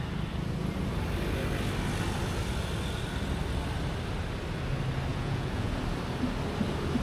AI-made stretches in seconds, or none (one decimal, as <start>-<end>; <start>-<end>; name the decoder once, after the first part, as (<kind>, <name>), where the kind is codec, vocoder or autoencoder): 5.1-5.7 (vocoder, Vocos)